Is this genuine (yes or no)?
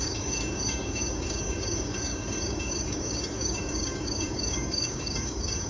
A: no